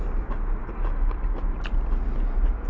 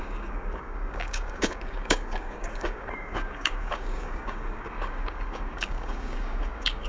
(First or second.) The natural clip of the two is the first